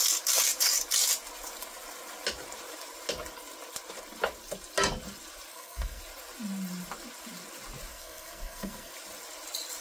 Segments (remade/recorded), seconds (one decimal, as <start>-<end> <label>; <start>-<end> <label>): 0.0-5.5 recorded; 5.5-6.0 remade; 6.0-7.9 recorded; 7.9-8.9 remade; 8.9-9.8 recorded